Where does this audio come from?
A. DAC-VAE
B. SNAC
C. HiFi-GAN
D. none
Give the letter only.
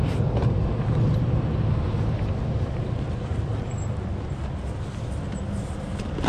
D